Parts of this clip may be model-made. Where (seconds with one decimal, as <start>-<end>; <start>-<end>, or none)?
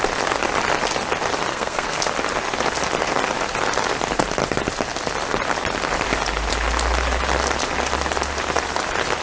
1.5-2.1